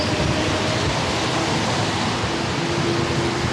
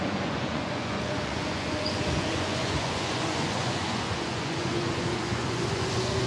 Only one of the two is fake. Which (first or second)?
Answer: second